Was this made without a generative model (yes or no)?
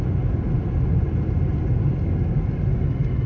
yes